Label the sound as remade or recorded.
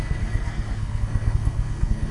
remade